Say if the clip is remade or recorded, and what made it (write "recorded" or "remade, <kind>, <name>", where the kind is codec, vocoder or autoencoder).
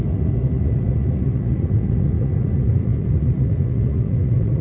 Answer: remade, vocoder, Vocos